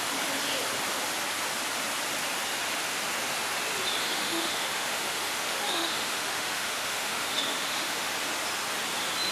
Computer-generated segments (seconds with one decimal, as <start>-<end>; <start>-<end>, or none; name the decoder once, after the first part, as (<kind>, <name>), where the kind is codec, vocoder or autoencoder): 4.0-8.1 (autoencoder, DAC-VAE)